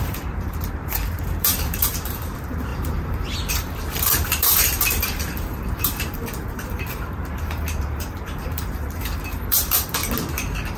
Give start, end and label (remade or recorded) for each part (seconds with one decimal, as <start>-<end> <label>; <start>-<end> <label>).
0.0-10.0 remade; 10.0-10.8 recorded